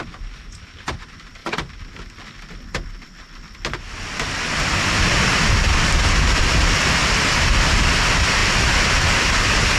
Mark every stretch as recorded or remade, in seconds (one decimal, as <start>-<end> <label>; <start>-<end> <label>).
0.0-9.8 recorded

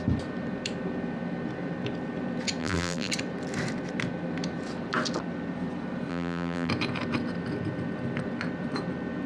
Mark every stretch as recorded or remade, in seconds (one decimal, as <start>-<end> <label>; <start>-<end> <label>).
0.0-2.6 recorded; 2.6-3.1 remade; 3.1-6.1 recorded; 6.1-6.7 remade; 6.7-9.3 recorded

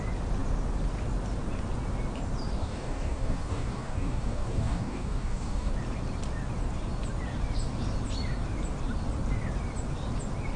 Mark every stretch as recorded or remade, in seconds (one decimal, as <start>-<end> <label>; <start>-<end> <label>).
0.0-2.6 recorded; 2.6-5.7 remade; 5.7-10.6 recorded

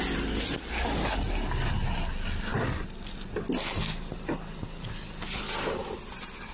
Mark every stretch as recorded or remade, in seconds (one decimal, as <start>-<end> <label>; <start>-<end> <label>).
0.0-6.5 recorded

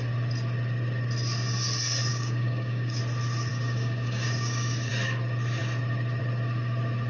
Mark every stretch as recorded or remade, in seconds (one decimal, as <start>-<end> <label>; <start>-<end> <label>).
0.0-2.1 recorded; 2.1-3.0 remade; 3.0-3.5 recorded; 3.5-4.9 remade; 4.9-7.1 recorded

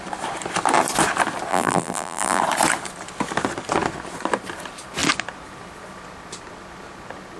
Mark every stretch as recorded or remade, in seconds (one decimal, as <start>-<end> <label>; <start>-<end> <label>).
0.0-1.5 recorded; 1.5-2.4 remade; 2.4-7.4 recorded

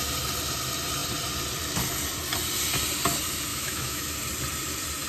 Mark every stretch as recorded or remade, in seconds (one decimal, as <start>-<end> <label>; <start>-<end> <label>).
0.0-3.5 recorded; 3.5-4.1 remade; 4.1-5.1 recorded